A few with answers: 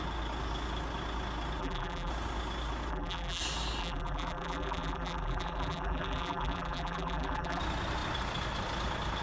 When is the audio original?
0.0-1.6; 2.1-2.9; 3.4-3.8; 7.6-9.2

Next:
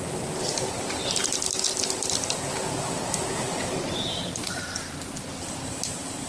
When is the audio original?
0.0-4.1